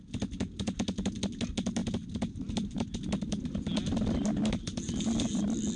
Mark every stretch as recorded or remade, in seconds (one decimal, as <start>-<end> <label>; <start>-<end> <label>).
0.0-5.8 recorded